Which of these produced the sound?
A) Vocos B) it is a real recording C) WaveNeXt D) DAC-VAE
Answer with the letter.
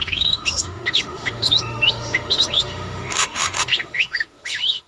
D